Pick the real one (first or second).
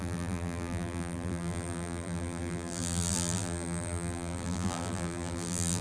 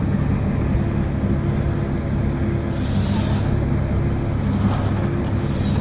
second